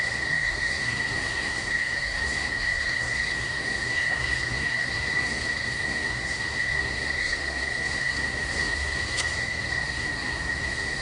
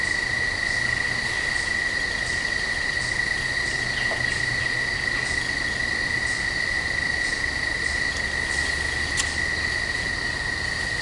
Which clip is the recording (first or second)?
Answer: second